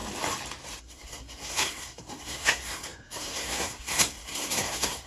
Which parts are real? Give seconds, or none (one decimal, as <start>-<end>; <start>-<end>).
0.0-0.8